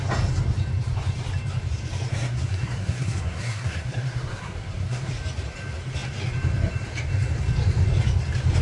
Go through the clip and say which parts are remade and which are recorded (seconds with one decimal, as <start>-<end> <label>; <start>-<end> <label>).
0.0-2.1 recorded; 2.1-5.1 remade; 5.1-8.6 recorded